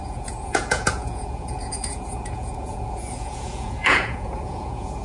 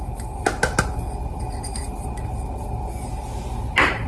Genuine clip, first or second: second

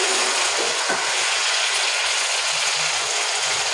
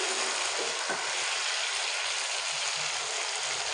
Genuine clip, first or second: second